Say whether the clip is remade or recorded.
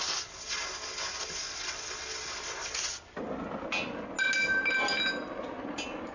recorded